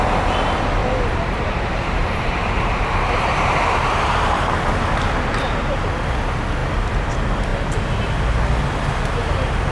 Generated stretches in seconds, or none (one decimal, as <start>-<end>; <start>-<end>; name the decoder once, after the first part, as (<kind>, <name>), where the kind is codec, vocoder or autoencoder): 0.8-5.8 (vocoder, BigVGAN v2)